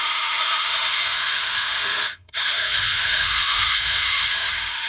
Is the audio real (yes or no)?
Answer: no